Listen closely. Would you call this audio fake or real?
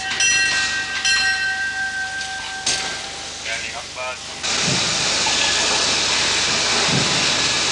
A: real